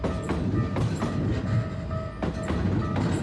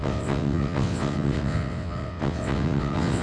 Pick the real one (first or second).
first